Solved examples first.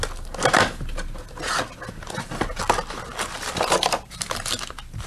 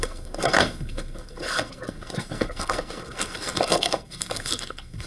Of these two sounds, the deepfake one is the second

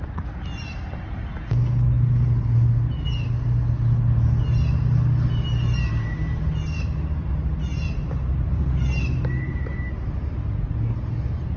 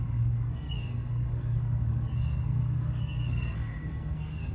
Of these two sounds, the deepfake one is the second